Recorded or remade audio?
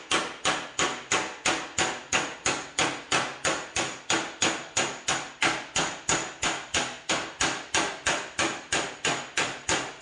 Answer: recorded